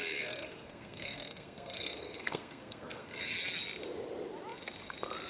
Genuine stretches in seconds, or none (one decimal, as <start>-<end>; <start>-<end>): 3.2-5.3